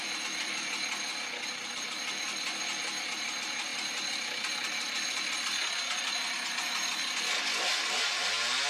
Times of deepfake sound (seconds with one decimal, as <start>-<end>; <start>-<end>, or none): none